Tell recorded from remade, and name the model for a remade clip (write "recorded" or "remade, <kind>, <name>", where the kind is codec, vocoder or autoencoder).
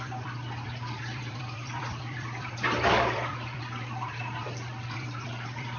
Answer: remade, vocoder, BigVGAN v2